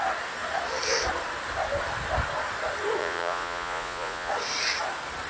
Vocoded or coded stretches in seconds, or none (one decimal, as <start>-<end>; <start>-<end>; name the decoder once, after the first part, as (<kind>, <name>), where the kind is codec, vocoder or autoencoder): 3.0-4.3 (vocoder, Vocos)